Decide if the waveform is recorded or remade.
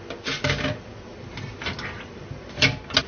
recorded